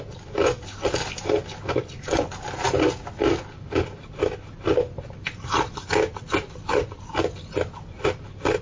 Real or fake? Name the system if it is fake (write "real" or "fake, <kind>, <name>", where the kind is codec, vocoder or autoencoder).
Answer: real